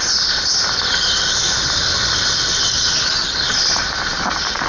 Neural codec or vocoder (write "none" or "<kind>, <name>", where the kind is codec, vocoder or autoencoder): none